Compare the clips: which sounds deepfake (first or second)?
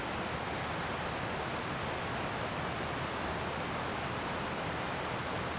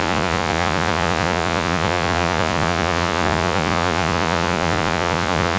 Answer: second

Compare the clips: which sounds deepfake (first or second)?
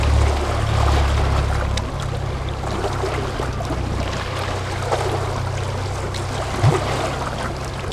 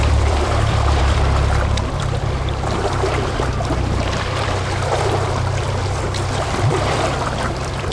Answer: second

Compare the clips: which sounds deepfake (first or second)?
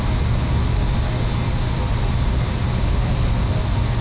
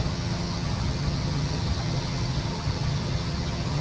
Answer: second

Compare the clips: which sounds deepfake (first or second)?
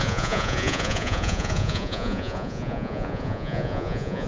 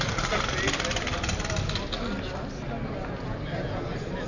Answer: first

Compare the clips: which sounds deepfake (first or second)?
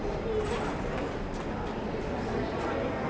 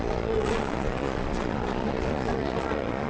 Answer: second